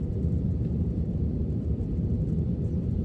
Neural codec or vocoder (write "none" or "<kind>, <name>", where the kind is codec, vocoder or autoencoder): vocoder, BigVGAN v2